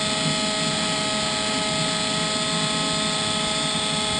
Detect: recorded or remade recorded